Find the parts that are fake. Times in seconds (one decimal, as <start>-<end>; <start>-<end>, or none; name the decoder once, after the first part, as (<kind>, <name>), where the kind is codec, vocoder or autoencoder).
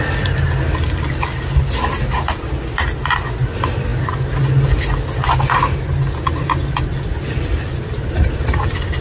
none